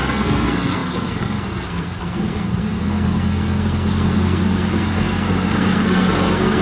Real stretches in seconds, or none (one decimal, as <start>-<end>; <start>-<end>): none